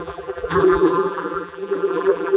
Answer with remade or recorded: remade